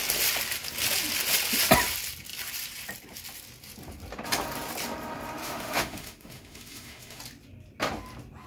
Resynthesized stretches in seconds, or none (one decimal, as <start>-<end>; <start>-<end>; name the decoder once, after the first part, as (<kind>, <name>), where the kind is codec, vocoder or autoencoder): 5.4-7.2 (autoencoder, DAC-VAE)